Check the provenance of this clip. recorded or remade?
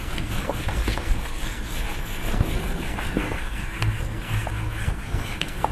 remade